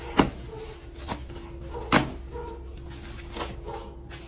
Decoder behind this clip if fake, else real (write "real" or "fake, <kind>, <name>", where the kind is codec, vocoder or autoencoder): real